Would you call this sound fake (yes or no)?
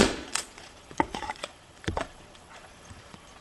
yes